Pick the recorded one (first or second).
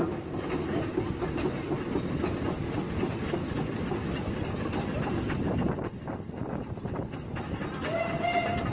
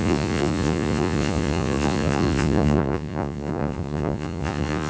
first